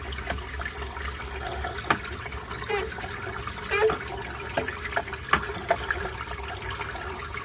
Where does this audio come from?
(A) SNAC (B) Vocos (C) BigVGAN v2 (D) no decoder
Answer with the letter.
D